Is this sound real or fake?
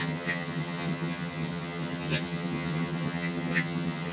fake